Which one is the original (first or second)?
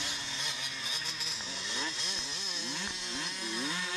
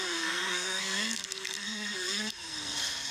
first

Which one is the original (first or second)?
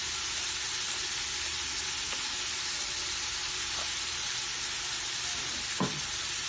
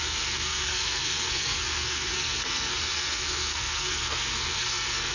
first